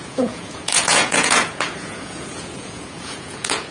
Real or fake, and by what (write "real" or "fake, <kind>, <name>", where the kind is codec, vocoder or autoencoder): fake, vocoder, Vocos